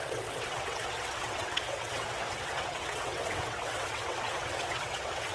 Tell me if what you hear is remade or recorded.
remade